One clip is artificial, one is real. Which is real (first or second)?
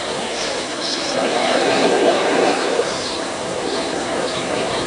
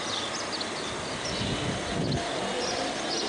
second